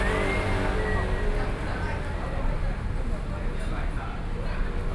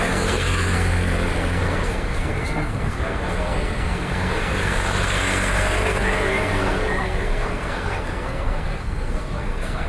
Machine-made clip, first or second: second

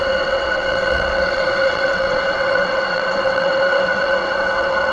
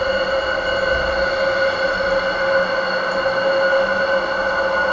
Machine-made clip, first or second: first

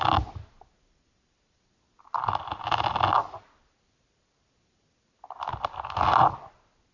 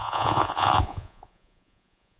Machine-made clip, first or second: second